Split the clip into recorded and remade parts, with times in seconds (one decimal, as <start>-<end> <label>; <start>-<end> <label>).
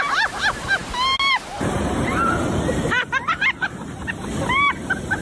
0.0-5.2 recorded